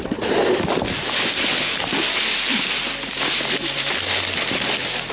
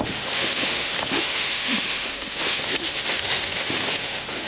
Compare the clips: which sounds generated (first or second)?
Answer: second